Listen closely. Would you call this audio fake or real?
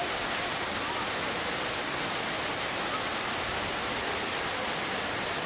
real